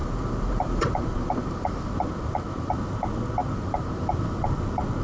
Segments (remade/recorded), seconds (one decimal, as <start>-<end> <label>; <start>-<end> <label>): 0.0-2.9 remade; 2.9-3.4 recorded; 3.4-4.6 remade; 4.6-5.0 recorded